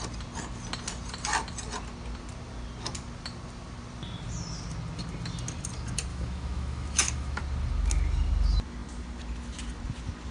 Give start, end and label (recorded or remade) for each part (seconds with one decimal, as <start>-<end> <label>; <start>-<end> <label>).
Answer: 0.0-6.1 recorded; 6.1-7.4 remade; 7.4-10.3 recorded